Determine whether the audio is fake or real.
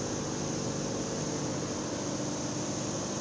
real